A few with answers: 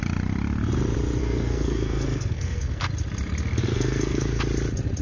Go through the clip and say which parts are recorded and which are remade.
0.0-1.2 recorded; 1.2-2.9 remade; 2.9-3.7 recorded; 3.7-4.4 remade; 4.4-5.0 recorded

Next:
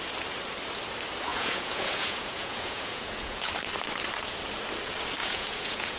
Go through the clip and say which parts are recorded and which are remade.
0.0-1.3 recorded; 1.3-3.5 remade; 3.5-5.2 recorded; 5.2-6.0 remade

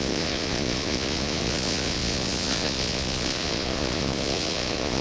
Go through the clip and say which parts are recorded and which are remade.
0.0-5.0 remade

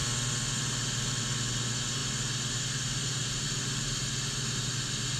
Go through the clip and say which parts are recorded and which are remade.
0.0-5.2 recorded

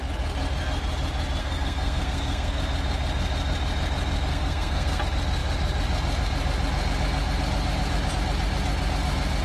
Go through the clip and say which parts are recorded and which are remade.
0.0-1.4 recorded; 1.4-2.6 remade; 2.6-4.3 recorded; 4.3-5.0 remade; 5.0-9.4 recorded

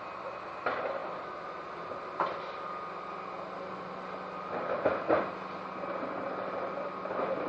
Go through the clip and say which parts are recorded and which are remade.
0.0-7.5 recorded

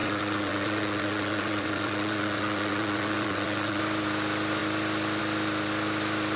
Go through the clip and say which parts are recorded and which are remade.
0.0-3.8 remade; 3.8-6.4 recorded